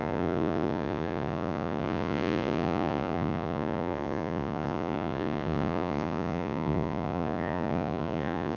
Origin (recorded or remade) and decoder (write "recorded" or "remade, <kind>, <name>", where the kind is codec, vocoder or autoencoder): remade, vocoder, Vocos